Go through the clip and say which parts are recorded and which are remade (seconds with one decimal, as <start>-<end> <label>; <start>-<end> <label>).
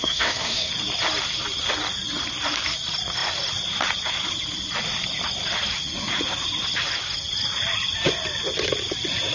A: 0.0-0.7 remade; 0.7-9.3 recorded